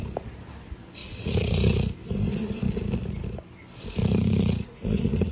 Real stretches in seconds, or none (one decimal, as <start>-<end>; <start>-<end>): 0.0-1.0; 1.8-4.0